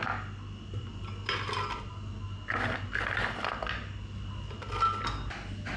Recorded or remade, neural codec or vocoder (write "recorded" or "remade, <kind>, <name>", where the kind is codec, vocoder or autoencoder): recorded